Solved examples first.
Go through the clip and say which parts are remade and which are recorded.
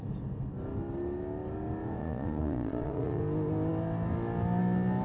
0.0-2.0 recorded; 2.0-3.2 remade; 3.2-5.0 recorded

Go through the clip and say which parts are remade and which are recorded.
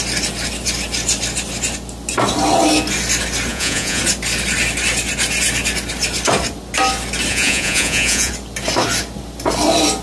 0.0-3.5 recorded; 3.5-4.0 remade; 4.0-7.3 recorded; 7.3-8.3 remade; 8.3-10.0 recorded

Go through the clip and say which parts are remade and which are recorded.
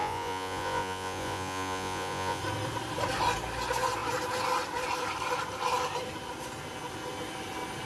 0.0-2.4 remade; 2.4-7.9 recorded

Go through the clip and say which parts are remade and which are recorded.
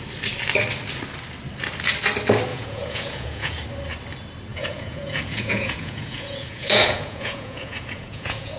0.0-2.5 recorded; 2.5-3.6 remade; 3.6-4.5 recorded; 4.5-8.6 remade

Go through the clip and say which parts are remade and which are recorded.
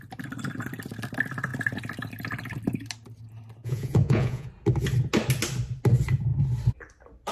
0.0-3.6 recorded; 3.6-4.5 remade; 4.5-7.3 recorded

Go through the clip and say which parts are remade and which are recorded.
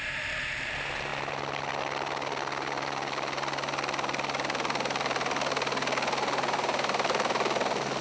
0.0-8.0 recorded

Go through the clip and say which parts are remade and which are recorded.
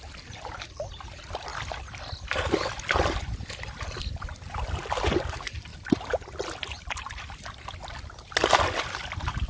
0.0-9.5 recorded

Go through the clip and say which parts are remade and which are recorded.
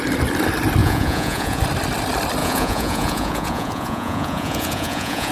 0.0-0.8 recorded; 0.8-1.6 remade; 1.6-2.4 recorded; 2.4-5.3 remade